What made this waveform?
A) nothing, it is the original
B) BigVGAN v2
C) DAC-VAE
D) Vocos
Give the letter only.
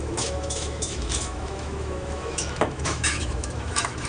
C